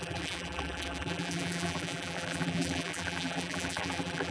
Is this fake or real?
fake